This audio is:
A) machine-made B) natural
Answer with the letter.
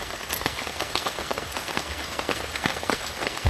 A